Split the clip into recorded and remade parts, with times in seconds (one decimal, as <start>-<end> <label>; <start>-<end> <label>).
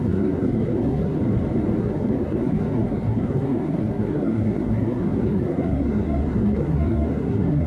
0.0-1.2 remade; 1.2-1.8 recorded; 1.8-7.7 remade